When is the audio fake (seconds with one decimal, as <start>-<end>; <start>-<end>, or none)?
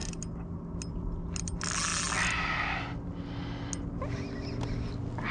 none